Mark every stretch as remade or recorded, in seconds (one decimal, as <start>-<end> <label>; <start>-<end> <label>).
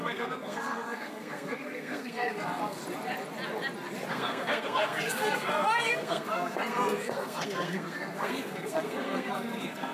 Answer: 0.0-2.8 remade; 2.8-4.1 recorded; 4.1-9.9 remade